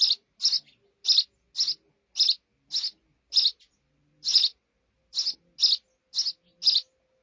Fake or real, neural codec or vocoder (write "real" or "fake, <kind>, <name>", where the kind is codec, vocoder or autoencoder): real